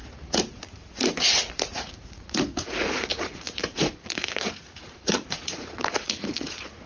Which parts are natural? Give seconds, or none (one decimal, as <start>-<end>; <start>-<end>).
none